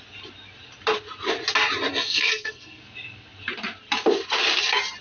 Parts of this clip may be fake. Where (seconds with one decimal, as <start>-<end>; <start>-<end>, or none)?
1.9-2.8